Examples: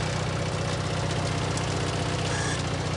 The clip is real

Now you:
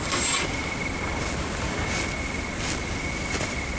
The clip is real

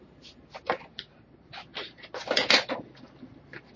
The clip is fake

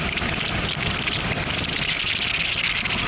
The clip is real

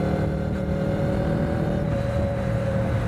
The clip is real